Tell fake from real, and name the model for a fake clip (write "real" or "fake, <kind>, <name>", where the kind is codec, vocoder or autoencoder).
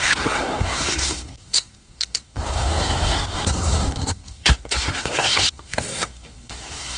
fake, codec, SNAC